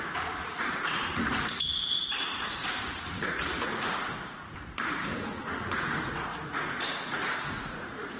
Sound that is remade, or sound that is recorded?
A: remade